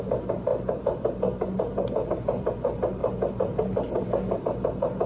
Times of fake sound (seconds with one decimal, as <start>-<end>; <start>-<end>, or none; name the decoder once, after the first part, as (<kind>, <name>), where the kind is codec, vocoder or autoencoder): none